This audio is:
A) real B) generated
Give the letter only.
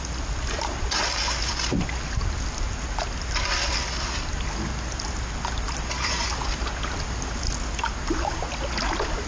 A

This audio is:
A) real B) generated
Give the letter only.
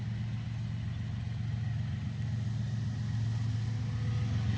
A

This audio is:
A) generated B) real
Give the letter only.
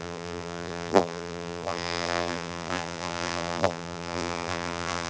A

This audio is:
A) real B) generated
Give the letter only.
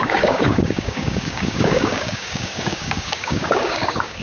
B